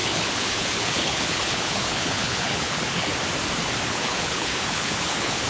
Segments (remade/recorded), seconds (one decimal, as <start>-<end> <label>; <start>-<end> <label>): 0.0-3.1 remade; 3.1-3.9 recorded; 3.9-5.5 remade